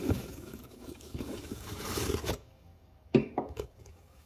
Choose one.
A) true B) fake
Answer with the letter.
B